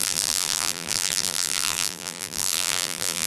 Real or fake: fake